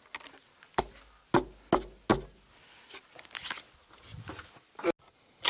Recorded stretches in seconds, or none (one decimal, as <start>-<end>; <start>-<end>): 0.0-5.5